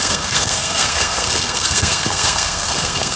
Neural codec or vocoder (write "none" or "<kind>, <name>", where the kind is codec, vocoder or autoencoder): codec, SNAC